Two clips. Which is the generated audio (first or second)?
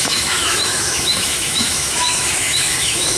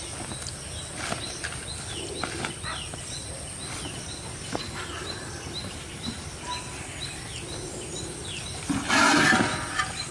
first